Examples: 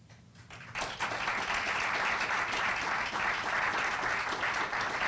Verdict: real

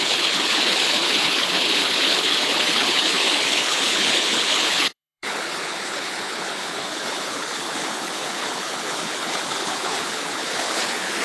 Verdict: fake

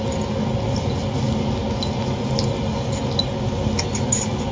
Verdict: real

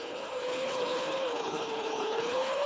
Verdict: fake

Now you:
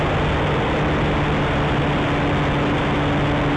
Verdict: real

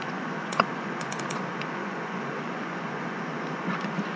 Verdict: fake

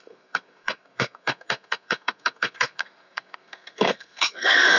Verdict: fake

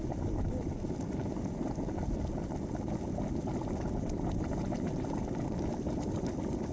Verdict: real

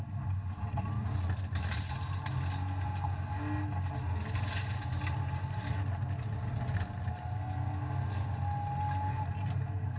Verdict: real